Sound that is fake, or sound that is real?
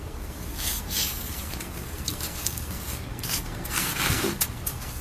fake